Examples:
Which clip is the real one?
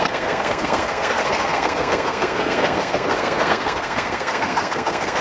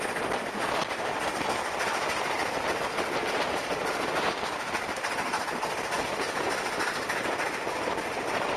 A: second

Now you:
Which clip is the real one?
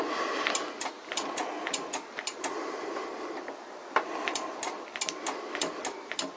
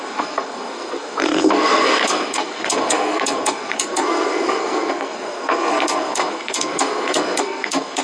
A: first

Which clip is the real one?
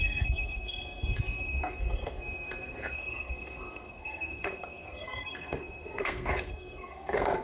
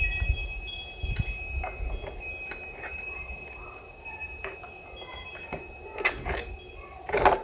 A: second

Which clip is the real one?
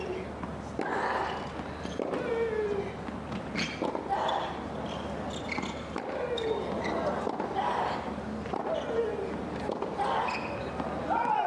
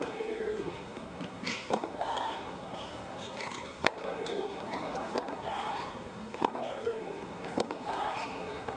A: first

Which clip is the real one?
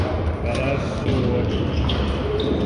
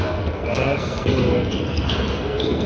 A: first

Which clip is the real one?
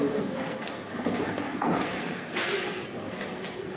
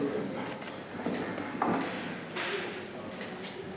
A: second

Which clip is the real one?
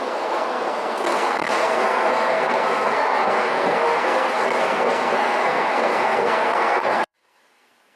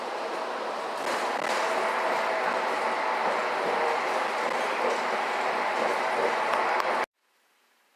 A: second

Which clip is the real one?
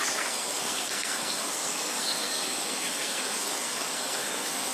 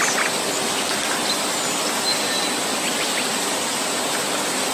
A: second